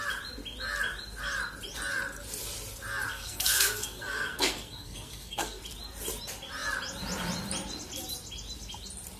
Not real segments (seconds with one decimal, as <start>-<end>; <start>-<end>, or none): 3.1-5.6